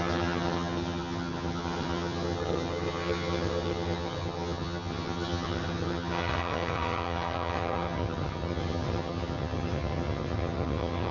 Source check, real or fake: fake